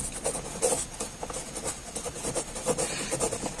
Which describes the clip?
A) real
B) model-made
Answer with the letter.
A